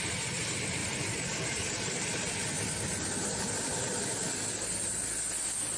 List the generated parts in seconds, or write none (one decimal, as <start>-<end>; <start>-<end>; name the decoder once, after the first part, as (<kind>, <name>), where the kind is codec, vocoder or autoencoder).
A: 0.8-4.3 (vocoder, BigVGAN v2)

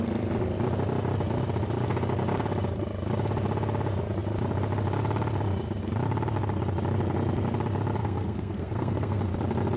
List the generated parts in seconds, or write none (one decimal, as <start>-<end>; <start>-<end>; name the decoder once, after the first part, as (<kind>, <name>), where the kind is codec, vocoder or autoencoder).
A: 8.0-9.2 (codec, SNAC)